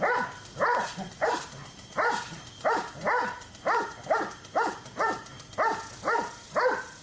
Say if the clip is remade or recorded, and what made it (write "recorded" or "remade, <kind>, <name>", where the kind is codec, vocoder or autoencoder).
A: recorded